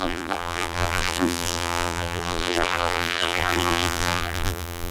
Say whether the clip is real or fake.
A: fake